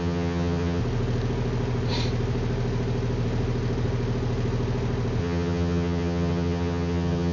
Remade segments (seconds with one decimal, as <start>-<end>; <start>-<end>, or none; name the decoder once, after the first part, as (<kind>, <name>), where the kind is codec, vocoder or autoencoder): 0.0-0.8 (vocoder, HiFi-GAN); 5.2-7.3